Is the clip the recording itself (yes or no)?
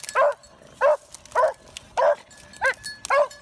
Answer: yes